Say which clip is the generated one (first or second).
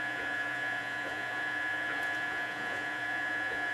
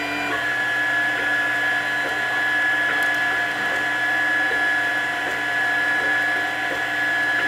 first